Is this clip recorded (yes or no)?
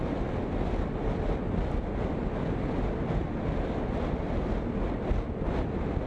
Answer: yes